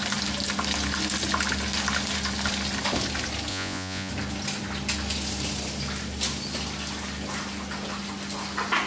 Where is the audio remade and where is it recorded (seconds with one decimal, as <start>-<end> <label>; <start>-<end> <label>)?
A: 0.0-3.5 recorded; 3.5-4.1 remade; 4.1-8.9 recorded